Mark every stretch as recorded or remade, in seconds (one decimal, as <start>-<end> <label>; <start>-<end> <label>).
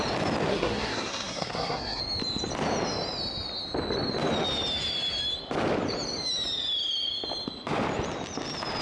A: 0.0-0.5 recorded; 0.5-2.0 remade; 2.0-8.8 recorded